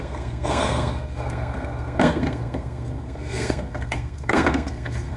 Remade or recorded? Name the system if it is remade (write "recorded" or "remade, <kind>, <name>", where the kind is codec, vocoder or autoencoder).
remade, codec, SNAC